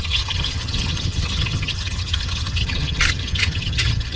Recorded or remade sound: remade